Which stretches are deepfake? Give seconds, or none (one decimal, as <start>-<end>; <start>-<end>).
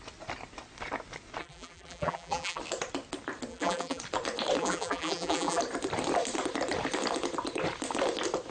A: 1.4-2.6; 3.5-4.0; 4.6-5.6